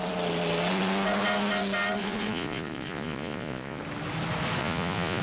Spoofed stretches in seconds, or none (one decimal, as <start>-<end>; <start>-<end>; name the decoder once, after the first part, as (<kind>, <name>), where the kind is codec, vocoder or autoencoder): 2.0-3.8 (vocoder, Vocos); 4.6-5.2